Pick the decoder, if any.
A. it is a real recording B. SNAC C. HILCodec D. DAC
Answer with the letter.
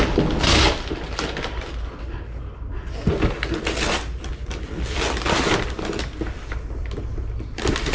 A